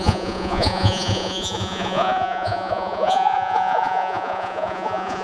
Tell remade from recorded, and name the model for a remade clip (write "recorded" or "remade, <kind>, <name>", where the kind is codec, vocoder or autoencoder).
remade, vocoder, Vocos